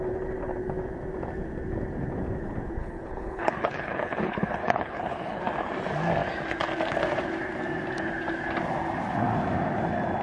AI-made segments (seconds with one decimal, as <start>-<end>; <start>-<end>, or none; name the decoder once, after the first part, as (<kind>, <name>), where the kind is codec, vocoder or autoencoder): 2.8-5.4 (codec, HILCodec)